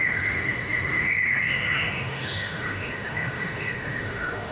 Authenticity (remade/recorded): remade